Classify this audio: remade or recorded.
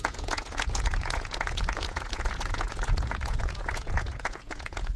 remade